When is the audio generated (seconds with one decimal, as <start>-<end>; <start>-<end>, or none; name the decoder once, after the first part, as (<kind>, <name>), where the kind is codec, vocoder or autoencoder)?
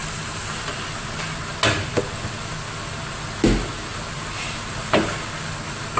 none